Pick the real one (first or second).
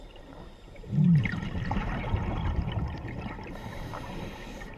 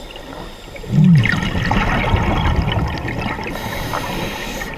second